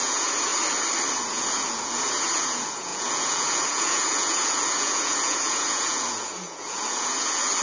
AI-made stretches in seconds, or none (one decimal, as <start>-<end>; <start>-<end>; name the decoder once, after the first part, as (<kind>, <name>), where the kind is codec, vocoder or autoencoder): 0.0-0.5 (vocoder, Vocos); 1.3-7.6